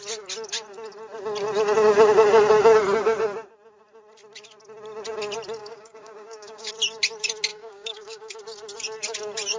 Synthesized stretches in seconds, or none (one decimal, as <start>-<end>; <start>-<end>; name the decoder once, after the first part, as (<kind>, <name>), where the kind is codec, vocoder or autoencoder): 5.6-6.7 (codec, DAC); 7.5-8.4

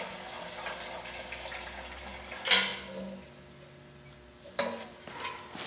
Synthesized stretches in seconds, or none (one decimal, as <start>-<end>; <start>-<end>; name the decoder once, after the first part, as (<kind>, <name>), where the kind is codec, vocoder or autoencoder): none

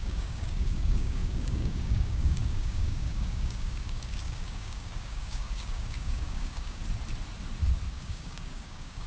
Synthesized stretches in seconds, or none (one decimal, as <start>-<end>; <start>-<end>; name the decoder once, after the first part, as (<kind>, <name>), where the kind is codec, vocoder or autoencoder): 0.0-6.8 (codec, DAC); 7.9-9.1

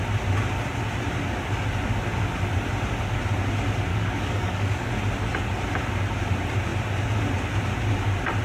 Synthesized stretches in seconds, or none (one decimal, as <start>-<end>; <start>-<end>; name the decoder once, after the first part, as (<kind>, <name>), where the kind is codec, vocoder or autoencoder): 3.9-4.9 (codec, DAC)

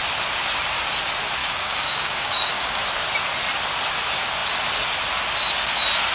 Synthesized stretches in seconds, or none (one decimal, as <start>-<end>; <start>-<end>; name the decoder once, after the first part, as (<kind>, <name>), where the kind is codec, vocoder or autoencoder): 1.4-2.8 (codec, DAC)

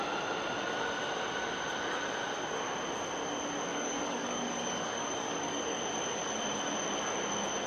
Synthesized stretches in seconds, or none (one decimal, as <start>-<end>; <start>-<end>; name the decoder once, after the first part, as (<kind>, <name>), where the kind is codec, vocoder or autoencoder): 3.7-5.8 (codec, DAC)

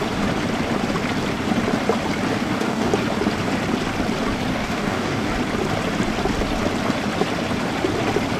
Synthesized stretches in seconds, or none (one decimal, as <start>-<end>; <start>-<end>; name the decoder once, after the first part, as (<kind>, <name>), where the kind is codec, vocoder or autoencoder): 2.3-2.9 (codec, DAC); 4.5-5.3